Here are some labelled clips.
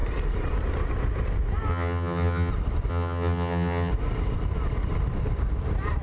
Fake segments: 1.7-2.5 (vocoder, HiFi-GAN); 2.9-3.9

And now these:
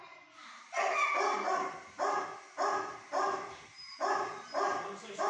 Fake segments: 0.4-1.1 (vocoder, BigVGAN v2); 3.1-5.3

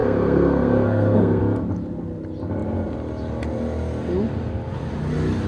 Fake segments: 0.0-1.4 (codec, SNAC)

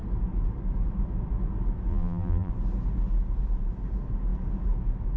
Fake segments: 1.9-2.5 (vocoder, BigVGAN v2)

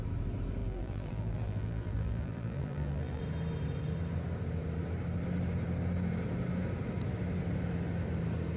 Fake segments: 0.6-3.2 (vocoder, BigVGAN v2)

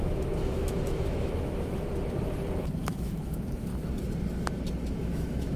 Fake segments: 0.0-1.7 (autoencoder, DAC-VAE); 2.8-3.7; 4.9-5.6

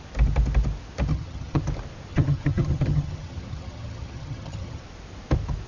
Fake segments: 1.1-1.6 (vocoder, HiFi-GAN); 2.1-4.8